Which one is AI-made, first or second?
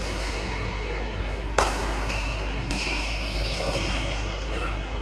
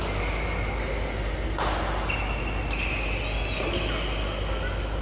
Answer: first